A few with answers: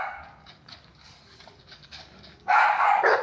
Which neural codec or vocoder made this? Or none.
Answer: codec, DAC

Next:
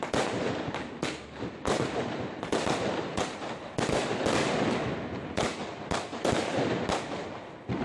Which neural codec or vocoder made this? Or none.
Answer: none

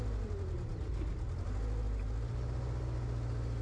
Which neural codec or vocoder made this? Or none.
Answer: none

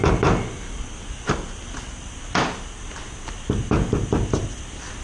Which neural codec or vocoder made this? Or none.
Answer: none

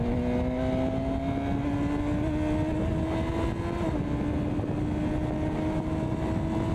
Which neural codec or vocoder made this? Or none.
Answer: none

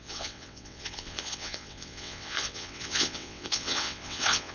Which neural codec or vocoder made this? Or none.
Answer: vocoder, WaveNeXt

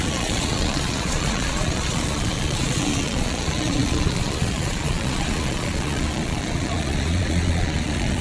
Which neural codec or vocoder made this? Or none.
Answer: vocoder, Vocos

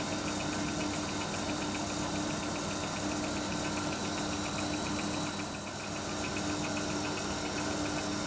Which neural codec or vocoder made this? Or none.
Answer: none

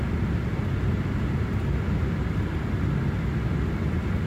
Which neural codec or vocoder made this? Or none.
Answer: none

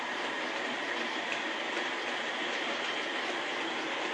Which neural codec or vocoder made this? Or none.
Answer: none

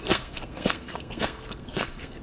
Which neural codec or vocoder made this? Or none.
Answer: codec, SNAC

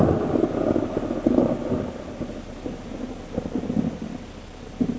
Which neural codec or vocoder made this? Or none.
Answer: none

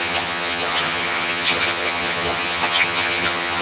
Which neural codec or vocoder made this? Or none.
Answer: vocoder, HiFi-GAN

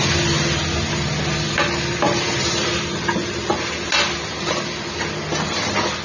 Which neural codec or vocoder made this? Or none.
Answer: none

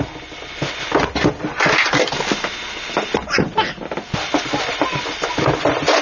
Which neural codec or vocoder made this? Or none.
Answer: none